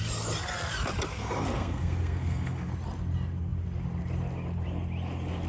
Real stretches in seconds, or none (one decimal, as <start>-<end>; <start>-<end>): 0.0-1.1; 2.7-5.5